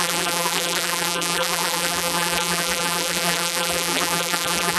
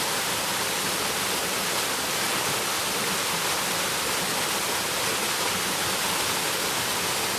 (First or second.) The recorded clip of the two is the second